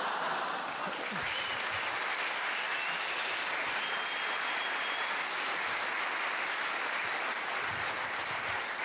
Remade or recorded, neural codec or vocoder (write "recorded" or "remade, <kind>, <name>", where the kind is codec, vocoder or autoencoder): recorded